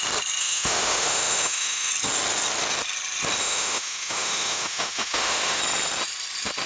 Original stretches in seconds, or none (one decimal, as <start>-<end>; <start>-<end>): 0.0-0.4; 1.9-3.4; 5.6-6.7